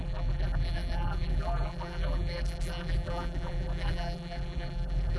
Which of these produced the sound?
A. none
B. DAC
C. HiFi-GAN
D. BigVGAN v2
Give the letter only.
D